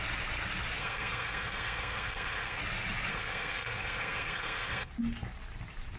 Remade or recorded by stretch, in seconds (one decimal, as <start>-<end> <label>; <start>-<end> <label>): 0.0-0.8 recorded; 0.8-2.6 remade; 2.6-3.1 recorded; 3.1-4.9 remade; 4.9-6.0 recorded